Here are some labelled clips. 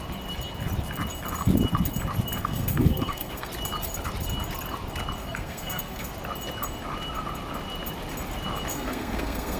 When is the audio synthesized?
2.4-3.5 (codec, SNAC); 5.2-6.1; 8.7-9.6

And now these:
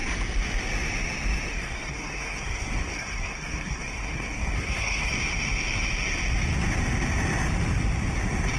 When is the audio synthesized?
1.5-5.1 (codec, SNAC)

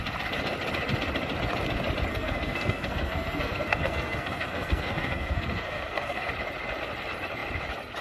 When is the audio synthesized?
2.1-6.3 (codec, SNAC)